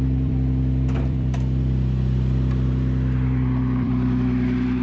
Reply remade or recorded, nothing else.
remade